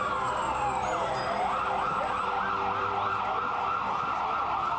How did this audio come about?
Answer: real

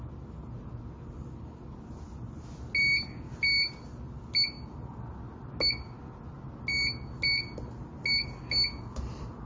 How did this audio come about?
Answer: real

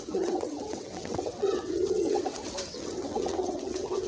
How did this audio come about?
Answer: fake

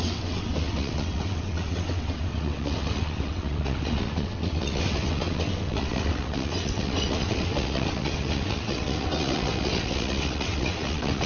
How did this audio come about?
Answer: fake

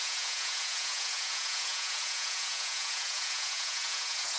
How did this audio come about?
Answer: fake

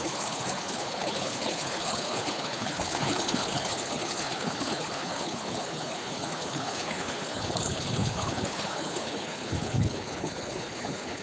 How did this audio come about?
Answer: fake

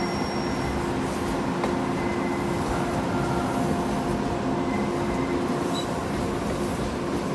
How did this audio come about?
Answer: real